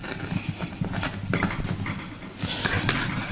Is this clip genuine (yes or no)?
yes